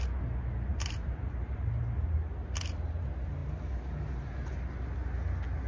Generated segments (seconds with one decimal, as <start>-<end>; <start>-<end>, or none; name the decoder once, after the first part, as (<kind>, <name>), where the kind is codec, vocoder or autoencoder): 0.7-1.7 (vocoder, BigVGAN v2)